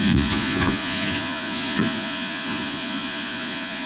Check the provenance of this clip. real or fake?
fake